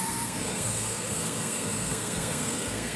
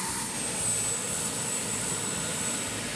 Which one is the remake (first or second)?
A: first